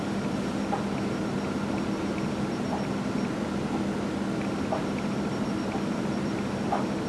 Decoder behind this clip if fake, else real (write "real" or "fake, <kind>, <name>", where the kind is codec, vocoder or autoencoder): real